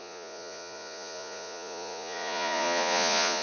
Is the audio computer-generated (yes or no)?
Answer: yes